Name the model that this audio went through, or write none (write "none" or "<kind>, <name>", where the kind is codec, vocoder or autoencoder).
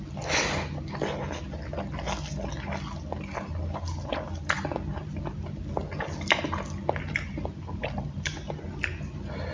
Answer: none